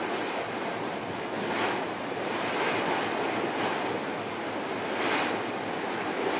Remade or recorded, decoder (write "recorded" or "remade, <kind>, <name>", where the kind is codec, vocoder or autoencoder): recorded